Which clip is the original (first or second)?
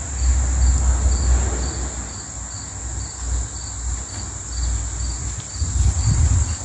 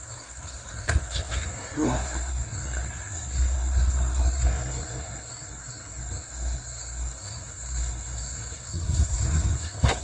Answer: first